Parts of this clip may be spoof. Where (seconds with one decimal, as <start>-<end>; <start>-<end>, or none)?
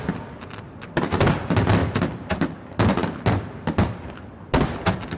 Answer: none